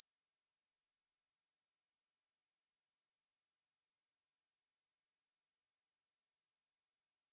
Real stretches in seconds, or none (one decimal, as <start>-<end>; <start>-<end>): 0.0-0.7; 1.3-7.3